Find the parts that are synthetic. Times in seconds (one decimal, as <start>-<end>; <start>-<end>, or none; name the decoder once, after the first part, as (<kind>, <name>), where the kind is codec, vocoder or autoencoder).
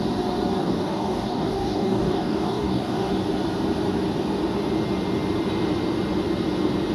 0.6-3.1 (codec, DAC)